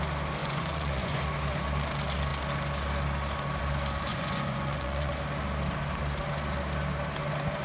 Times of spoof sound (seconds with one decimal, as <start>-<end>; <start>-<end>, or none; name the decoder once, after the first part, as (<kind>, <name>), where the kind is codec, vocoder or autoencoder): 0.4-1.2 (vocoder, Vocos); 4.1-5.1

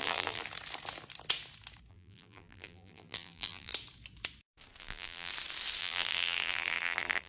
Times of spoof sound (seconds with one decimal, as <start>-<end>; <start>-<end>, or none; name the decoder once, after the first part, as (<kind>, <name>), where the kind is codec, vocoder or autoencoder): 0.0-0.4 (vocoder, BigVGAN v2); 1.9-3.7; 4.8-5.3; 5.8-7.3

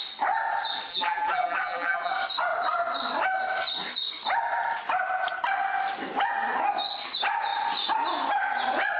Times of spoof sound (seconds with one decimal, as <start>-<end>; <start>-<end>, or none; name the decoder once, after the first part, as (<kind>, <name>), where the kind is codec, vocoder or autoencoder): 0.9-2.1 (vocoder, BigVGAN v2)

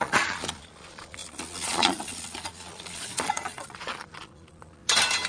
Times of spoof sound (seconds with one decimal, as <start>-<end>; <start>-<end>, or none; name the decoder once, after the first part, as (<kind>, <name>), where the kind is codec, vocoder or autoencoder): 0.0-4.8 (vocoder, Vocos)

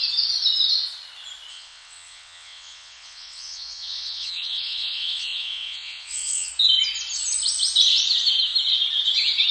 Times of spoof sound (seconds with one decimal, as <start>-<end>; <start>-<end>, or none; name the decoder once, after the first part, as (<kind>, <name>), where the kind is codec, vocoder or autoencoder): 1.5-6.5 (vocoder, WaveNeXt)

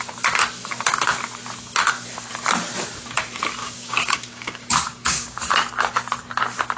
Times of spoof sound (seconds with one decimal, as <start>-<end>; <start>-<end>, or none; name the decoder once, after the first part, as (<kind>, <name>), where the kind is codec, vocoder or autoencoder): 3.6-5.4 (codec, DAC)

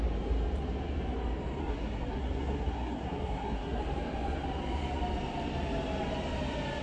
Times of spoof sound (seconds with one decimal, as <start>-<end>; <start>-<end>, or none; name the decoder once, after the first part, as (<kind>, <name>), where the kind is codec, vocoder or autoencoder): 1.6-3.8 (codec, SNAC)